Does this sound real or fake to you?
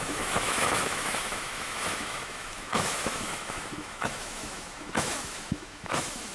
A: fake